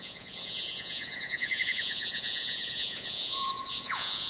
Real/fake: fake